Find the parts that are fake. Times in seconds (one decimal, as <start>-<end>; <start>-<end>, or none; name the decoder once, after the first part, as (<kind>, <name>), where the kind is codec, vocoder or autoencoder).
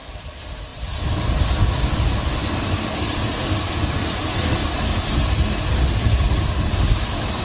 0.0-4.6 (vocoder, BigVGAN v2); 6.7-7.4